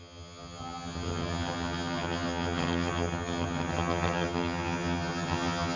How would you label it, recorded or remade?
remade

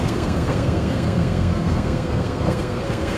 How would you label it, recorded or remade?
remade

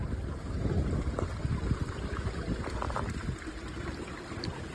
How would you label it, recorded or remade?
recorded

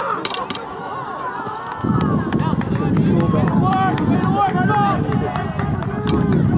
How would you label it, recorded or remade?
recorded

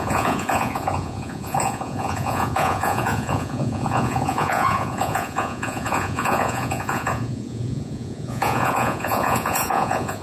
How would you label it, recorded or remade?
remade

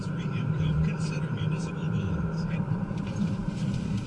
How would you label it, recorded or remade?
remade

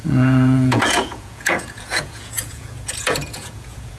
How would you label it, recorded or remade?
remade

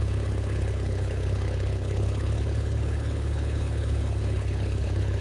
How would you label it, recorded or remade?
remade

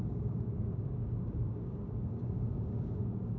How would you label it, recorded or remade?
remade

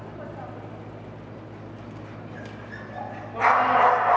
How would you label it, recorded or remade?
recorded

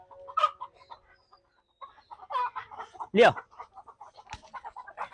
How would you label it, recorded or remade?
recorded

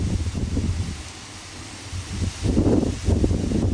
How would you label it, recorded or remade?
recorded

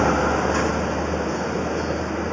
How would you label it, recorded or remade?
recorded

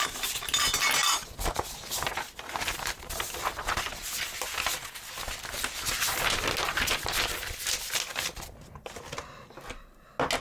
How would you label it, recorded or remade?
recorded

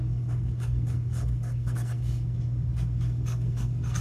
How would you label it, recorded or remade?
remade